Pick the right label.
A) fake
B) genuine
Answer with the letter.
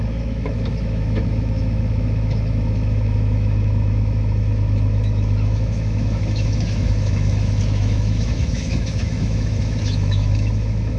A